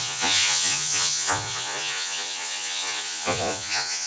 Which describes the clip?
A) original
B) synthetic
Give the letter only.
B